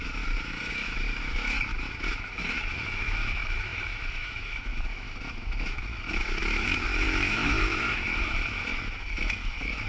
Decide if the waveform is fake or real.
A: fake